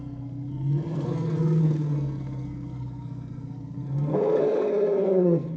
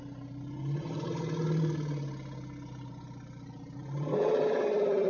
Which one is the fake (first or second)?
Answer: first